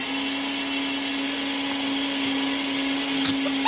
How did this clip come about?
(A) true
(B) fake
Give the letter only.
A